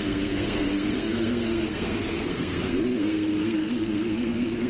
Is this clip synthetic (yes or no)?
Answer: yes